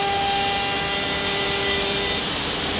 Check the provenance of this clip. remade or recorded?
recorded